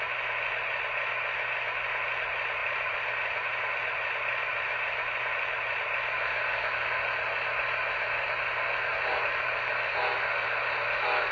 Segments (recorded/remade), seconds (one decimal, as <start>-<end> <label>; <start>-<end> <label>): 0.0-2.6 recorded; 2.6-3.8 remade; 3.8-8.9 recorded; 8.9-9.7 remade; 9.7-11.3 recorded